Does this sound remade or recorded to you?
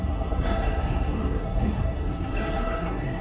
remade